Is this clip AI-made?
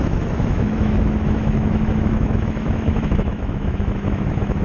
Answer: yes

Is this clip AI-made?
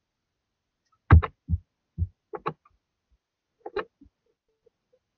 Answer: no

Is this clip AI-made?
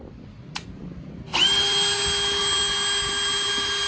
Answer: no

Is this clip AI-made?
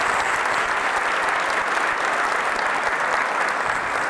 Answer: no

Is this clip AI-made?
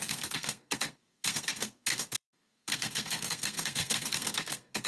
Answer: yes